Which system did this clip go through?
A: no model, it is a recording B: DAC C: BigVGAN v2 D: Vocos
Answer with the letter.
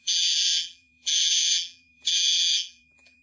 C